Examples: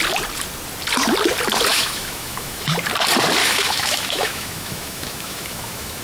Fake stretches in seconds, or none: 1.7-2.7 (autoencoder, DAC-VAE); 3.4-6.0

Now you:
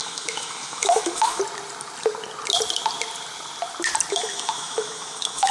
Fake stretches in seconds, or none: 0.0-1.4 (autoencoder, DAC-VAE); 4.1-5.5